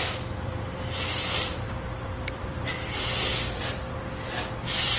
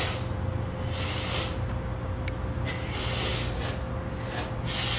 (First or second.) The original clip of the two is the second